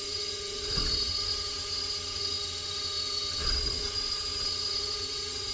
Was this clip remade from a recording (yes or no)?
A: yes